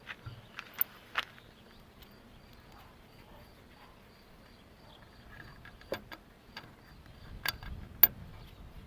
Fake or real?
real